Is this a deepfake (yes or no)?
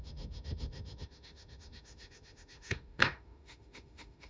yes